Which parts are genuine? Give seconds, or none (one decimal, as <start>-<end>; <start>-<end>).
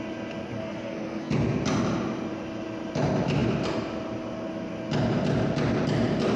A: 0.0-0.6; 1.3-6.4